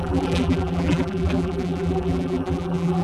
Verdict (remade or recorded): remade